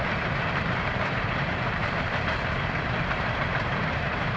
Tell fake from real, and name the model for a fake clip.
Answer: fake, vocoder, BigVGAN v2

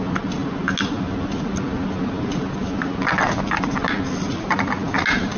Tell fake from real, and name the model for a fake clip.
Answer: real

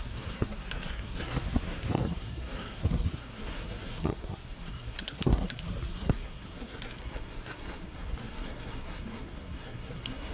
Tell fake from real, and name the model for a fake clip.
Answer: fake, codec, SNAC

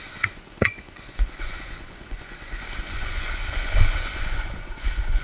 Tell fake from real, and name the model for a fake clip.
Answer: fake, vocoder, Vocos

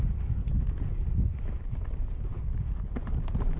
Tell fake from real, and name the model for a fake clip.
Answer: real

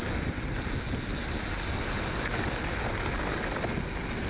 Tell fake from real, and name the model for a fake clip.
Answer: real